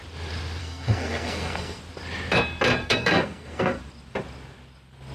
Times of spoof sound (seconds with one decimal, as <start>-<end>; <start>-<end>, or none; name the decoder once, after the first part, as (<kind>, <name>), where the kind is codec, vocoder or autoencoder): 0.6-1.8 (codec, SNAC); 2.8-3.8

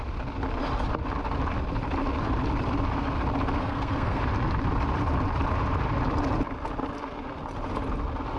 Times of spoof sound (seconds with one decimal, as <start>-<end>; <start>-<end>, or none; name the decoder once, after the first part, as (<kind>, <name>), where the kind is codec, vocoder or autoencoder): 3.6-4.2 (codec, SNAC)